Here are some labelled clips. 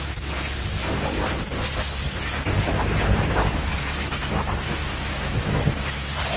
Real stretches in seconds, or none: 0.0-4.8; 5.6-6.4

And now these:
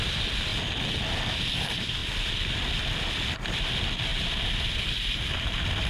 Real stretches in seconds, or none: 0.5-1.5; 2.0-3.5

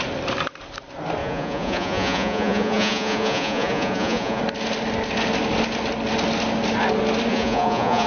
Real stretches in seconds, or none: 0.0-1.2; 4.4-7.3

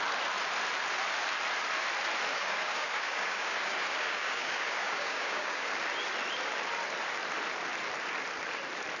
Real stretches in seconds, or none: 0.0-2.3; 5.7-9.0